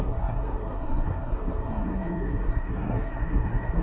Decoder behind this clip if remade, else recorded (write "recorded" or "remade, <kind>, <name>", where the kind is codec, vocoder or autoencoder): remade, codec, SNAC